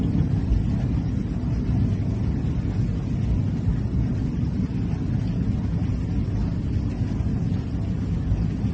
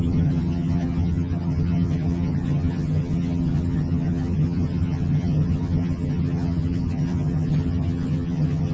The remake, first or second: second